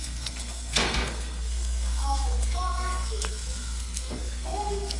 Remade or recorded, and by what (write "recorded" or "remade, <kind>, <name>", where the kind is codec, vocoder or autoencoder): remade, codec, SNAC